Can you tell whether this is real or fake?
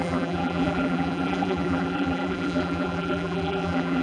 fake